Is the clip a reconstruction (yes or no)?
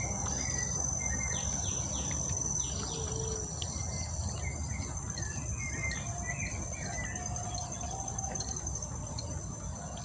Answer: no